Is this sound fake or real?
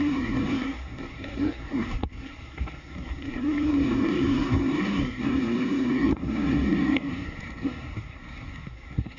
fake